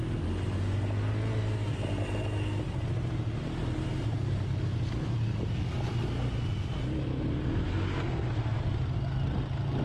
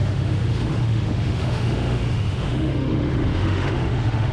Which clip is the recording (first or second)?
first